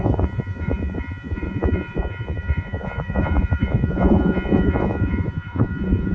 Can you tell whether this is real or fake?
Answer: fake